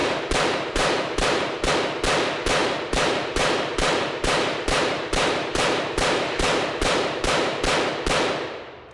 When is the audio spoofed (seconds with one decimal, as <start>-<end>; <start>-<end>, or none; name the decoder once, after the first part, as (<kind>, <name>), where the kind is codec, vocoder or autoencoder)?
0.0-1.7 (vocoder, BigVGAN v2); 2.6-7.6